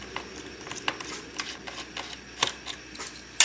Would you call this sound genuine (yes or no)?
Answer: yes